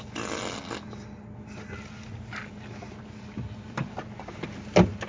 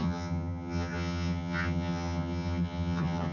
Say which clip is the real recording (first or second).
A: first